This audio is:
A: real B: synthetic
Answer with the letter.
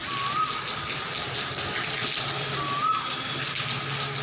A